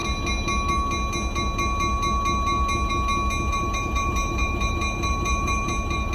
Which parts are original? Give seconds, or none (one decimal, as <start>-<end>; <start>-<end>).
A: 0.0-3.5

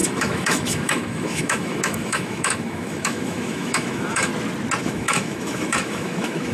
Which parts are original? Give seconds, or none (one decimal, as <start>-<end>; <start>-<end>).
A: 4.3-4.8

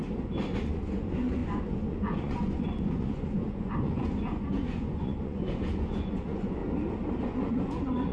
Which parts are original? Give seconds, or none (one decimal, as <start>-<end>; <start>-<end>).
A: 0.0-0.6; 6.6-7.2

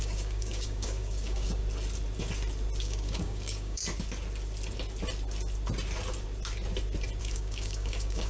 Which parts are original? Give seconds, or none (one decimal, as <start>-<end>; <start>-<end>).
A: 1.6-2.8; 3.8-7.2